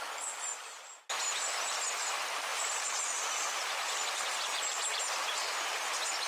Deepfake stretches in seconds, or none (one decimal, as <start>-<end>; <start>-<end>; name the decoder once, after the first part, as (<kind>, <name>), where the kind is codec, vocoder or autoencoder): 2.5-5.8 (vocoder, BigVGAN v2)